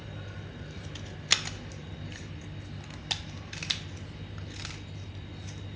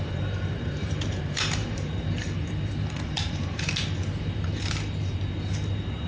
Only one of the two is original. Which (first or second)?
first